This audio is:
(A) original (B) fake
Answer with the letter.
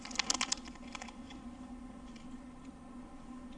A